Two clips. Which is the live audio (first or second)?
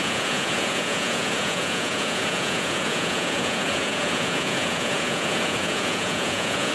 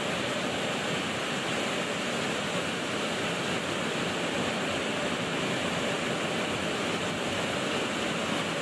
second